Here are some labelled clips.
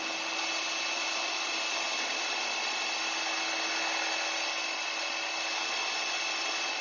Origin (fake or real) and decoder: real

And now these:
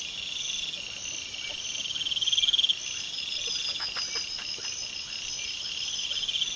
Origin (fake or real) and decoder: real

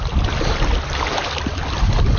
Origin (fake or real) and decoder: real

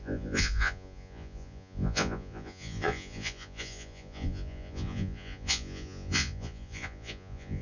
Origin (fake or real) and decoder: fake, vocoder, Vocos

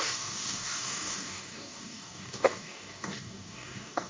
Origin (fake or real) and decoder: fake, codec, DAC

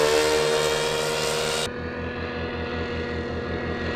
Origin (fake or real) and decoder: real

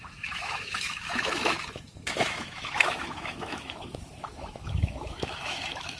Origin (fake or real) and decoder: fake, autoencoder, DAC-VAE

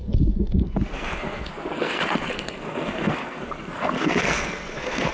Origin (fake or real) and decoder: fake, codec, SNAC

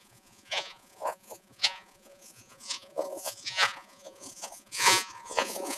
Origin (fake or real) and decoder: fake, vocoder, Vocos